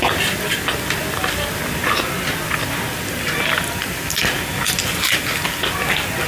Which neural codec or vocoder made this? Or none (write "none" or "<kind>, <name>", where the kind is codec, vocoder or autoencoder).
none